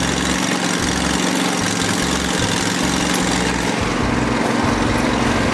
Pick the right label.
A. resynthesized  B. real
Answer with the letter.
B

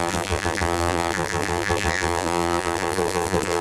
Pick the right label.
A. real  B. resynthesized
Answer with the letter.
B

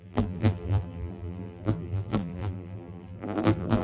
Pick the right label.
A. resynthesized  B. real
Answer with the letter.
A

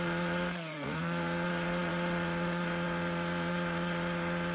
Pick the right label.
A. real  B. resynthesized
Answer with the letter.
B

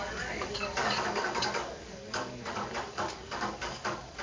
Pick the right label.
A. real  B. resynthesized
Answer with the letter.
B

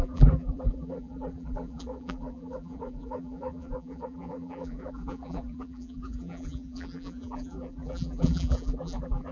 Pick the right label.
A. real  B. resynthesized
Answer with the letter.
B